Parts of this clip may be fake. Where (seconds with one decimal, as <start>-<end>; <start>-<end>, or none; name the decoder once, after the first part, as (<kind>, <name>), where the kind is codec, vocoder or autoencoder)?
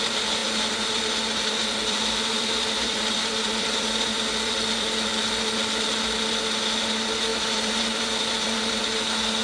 0.4-4.9 (vocoder, BigVGAN v2); 7.3-8.8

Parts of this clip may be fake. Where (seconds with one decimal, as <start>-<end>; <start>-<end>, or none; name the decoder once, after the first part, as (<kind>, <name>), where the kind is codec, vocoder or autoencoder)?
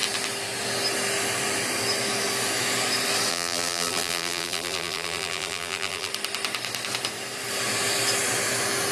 3.3-6.1 (vocoder, BigVGAN v2)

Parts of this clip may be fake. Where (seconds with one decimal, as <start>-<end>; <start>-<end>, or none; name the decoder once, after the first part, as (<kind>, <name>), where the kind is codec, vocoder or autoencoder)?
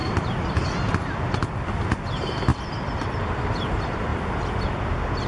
2.5-3.1 (vocoder, BigVGAN v2); 4.1-4.8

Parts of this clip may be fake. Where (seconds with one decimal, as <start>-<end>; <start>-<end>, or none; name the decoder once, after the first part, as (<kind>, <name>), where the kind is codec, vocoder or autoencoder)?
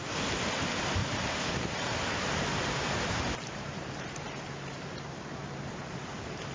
1.0-4.9 (vocoder, BigVGAN v2); 5.4-6.0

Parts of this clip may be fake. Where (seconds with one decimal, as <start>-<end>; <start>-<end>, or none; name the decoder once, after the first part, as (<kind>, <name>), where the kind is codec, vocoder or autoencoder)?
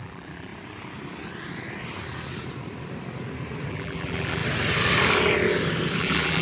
0.0-0.5 (vocoder, BigVGAN v2); 3.7-4.4; 6.0-6.4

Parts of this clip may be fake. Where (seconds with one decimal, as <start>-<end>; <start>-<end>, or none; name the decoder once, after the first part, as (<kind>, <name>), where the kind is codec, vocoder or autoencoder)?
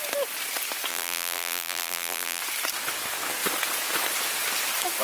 0.9-2.4 (vocoder, BigVGAN v2)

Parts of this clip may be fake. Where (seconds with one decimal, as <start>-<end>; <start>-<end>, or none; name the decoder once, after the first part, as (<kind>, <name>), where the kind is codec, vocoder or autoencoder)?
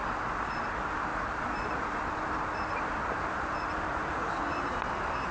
1.1-4.3 (vocoder, BigVGAN v2)